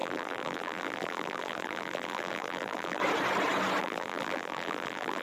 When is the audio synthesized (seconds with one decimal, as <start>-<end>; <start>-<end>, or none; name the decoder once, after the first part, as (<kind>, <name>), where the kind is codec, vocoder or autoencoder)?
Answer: 0.0-3.0 (vocoder, BigVGAN v2); 3.8-5.2